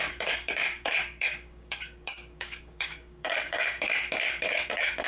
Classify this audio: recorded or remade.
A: remade